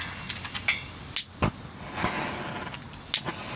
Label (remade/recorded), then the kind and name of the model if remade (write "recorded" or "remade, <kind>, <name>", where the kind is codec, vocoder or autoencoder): recorded